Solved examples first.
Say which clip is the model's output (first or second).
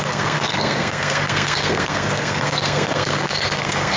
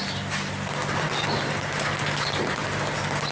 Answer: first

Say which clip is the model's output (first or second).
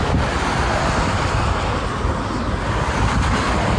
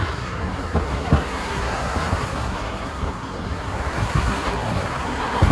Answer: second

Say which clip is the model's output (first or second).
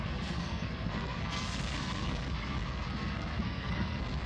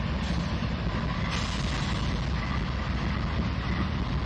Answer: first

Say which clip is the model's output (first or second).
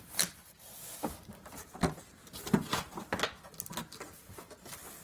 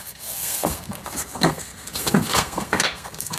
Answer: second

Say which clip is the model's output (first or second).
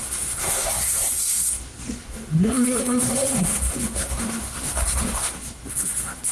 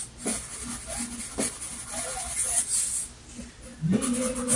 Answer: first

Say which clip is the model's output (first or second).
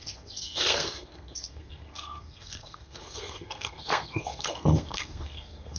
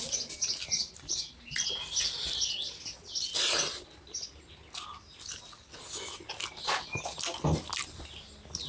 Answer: first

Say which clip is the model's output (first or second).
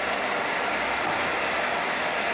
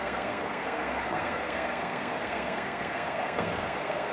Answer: second